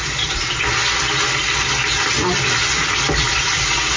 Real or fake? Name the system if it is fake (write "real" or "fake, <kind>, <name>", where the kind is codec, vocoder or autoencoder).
real